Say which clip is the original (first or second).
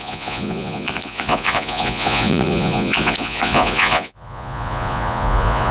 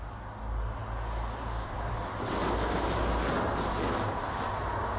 second